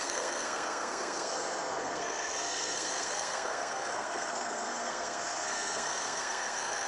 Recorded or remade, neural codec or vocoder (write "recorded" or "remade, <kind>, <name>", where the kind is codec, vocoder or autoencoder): remade, codec, SNAC